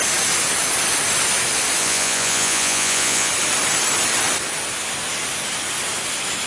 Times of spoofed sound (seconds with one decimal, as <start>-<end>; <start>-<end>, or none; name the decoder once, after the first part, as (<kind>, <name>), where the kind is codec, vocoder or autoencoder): 1.8-3.3 (vocoder, Vocos)